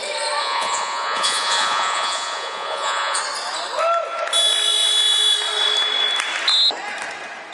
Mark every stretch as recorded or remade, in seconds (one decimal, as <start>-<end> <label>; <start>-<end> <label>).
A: 0.0-0.4 recorded; 0.4-3.2 remade; 3.2-7.5 recorded